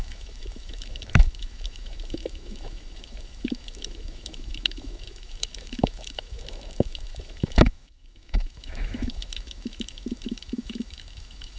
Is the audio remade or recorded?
remade